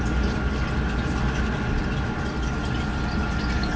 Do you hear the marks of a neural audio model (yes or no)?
no